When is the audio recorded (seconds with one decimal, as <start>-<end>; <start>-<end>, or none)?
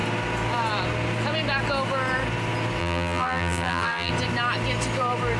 0.0-2.8; 4.1-5.4